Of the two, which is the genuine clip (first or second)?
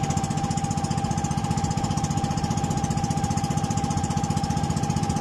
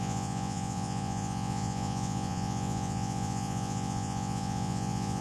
first